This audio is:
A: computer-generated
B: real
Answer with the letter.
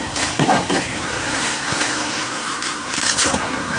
A